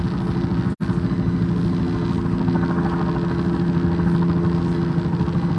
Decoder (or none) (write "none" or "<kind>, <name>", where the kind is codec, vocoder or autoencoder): none